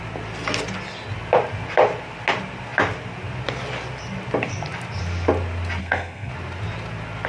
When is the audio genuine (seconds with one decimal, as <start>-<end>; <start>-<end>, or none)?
0.0-5.8; 6.3-7.3

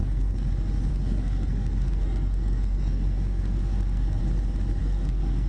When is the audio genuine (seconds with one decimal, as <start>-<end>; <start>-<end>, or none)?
0.5-0.9; 4.2-4.8

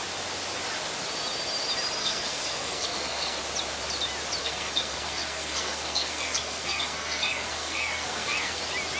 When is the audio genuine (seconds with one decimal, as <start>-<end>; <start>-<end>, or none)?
0.0-2.0; 3.4-4.4; 8.6-9.0

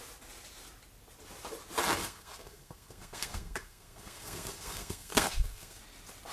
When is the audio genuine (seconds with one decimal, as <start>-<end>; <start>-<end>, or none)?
0.0-2.0; 5.8-6.3

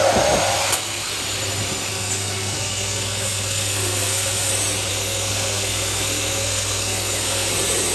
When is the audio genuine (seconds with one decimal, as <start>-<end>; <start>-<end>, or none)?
0.0-0.6; 1.1-1.9; 4.5-4.9; 7.5-7.9

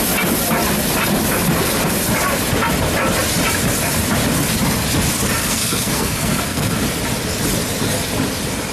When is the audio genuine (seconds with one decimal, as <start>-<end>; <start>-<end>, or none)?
0.0-5.4; 6.8-8.7

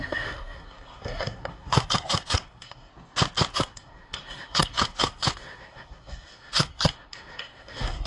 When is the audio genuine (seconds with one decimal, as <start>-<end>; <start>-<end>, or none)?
2.9-3.5